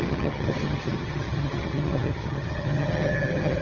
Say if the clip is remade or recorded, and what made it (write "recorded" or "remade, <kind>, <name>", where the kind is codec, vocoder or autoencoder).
remade, vocoder, HiFi-GAN